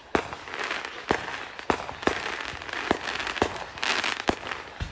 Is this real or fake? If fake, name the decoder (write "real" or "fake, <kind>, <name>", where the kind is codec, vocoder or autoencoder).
real